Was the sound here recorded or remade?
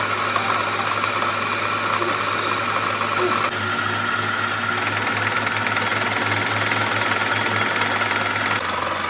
recorded